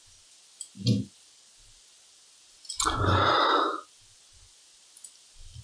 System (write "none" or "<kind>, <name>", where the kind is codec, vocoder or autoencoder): none